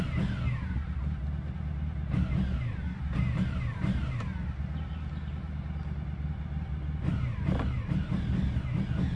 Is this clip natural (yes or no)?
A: yes